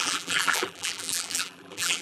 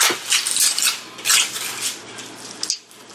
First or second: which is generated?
first